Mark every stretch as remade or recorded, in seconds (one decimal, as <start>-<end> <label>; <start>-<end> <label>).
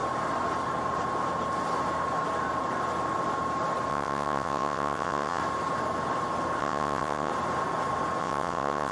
0.0-3.9 recorded; 3.9-5.4 remade; 5.4-6.6 recorded; 6.6-7.3 remade; 7.3-8.2 recorded; 8.2-8.9 remade